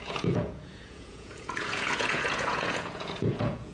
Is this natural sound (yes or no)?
no